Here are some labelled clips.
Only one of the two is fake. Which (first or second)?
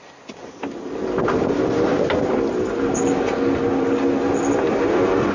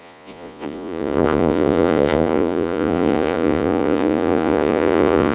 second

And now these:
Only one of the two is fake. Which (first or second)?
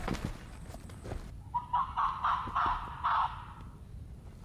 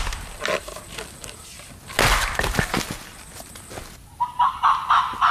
first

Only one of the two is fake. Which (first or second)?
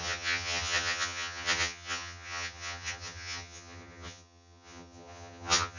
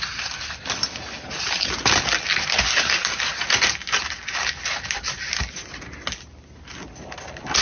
first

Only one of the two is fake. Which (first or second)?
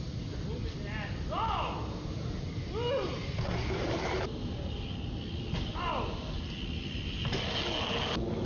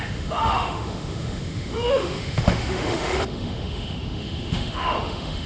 second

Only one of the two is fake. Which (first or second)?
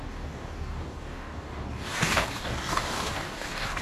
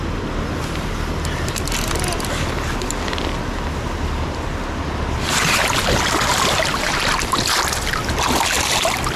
first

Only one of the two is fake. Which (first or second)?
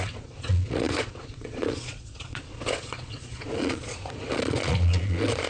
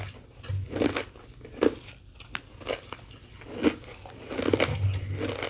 first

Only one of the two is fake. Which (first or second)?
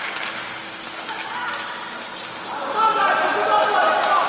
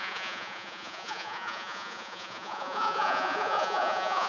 second